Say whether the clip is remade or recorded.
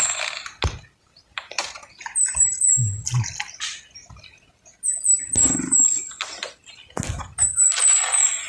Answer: recorded